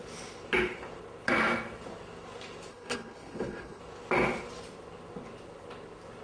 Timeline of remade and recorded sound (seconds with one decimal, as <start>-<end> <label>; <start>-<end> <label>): 0.0-2.7 recorded; 2.7-3.8 remade; 3.8-6.2 recorded